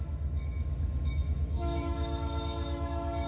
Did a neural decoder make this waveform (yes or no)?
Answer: yes